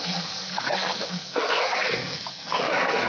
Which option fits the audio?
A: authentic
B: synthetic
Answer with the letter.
B